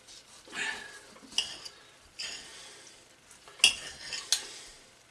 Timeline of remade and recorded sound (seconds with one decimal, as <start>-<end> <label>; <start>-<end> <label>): 0.0-5.1 recorded